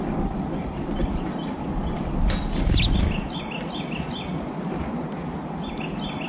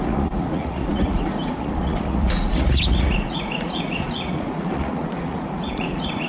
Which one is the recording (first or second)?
first